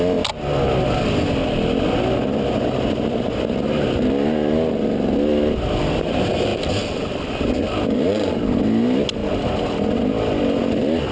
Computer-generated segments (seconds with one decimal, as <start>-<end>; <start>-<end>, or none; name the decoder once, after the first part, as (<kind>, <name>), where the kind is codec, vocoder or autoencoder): none